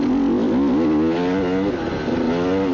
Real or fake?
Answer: real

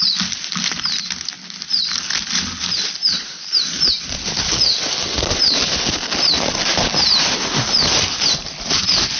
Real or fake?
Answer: real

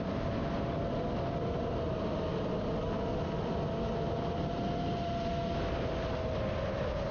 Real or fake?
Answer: real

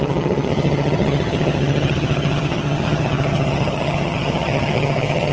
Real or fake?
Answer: fake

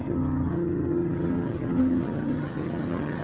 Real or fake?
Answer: fake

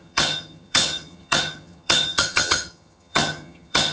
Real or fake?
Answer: fake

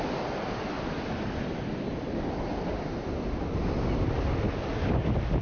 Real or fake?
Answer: real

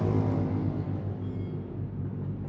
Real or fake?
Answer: real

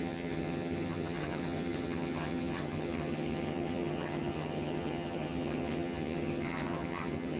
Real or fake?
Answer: fake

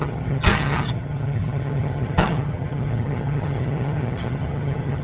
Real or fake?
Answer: fake